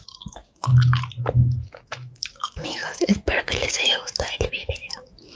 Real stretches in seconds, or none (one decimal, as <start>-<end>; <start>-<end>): 0.7-1.2